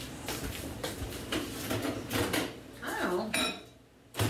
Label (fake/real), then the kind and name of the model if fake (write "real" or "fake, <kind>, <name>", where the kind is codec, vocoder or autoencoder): fake, vocoder, BigVGAN v2